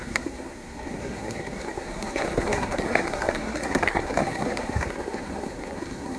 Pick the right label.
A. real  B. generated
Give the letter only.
B